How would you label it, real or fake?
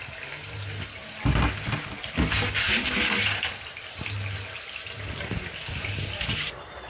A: real